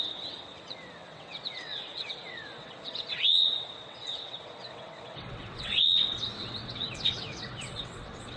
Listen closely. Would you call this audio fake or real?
fake